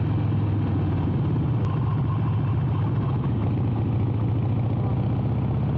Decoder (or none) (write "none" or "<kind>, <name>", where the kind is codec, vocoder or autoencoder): none